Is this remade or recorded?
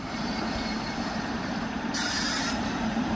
remade